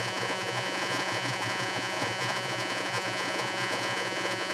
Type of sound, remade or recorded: remade